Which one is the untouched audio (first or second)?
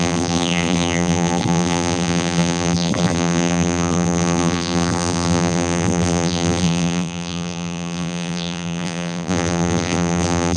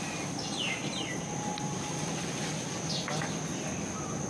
second